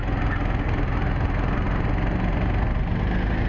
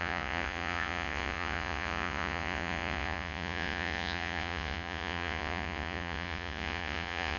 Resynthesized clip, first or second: second